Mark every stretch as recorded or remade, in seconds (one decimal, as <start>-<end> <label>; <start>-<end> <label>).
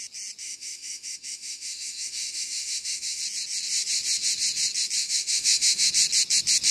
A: 0.0-0.4 recorded; 0.4-3.2 remade; 3.2-5.0 recorded; 5.0-5.9 remade; 5.9-6.7 recorded